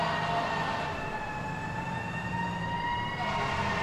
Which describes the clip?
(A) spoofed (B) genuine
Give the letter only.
B